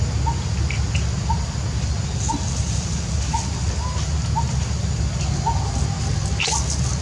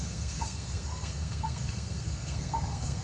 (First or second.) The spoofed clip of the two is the second